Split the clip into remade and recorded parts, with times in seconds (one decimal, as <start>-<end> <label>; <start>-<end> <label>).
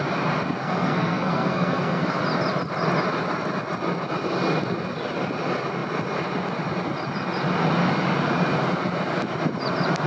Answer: 0.0-0.6 recorded; 0.6-2.2 remade; 2.2-10.1 recorded